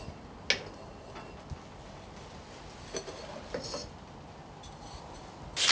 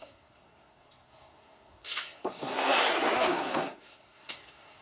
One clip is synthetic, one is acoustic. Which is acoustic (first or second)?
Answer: first